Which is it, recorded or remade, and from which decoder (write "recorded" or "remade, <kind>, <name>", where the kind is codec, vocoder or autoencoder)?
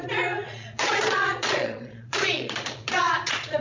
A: remade, vocoder, Vocos